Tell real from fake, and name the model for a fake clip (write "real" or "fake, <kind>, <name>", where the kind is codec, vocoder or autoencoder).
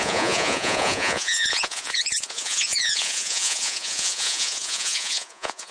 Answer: fake, vocoder, Vocos